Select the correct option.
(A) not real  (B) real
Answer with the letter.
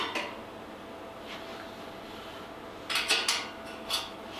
B